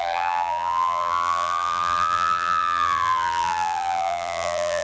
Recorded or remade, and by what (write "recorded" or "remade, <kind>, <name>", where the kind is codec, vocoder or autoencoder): remade, vocoder, BigVGAN v2